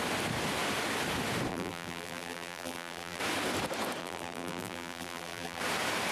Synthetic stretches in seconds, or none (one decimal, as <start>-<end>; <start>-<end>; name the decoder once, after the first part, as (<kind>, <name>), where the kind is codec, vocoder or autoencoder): 1.5-3.2 (vocoder, BigVGAN v2); 4.0-5.6